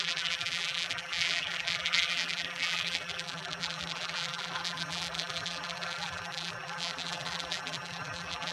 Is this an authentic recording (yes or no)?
no